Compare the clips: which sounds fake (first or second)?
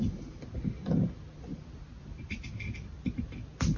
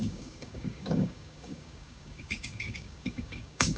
second